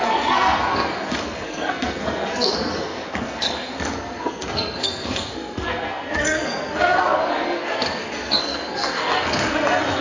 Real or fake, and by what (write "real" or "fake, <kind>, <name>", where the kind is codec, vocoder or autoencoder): fake, codec, SNAC